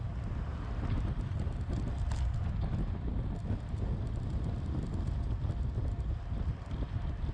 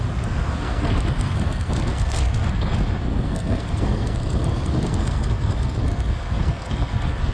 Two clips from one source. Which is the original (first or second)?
first